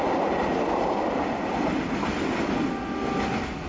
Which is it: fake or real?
real